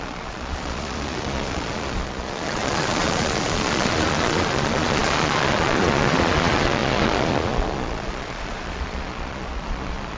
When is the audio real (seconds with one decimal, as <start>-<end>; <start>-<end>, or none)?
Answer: none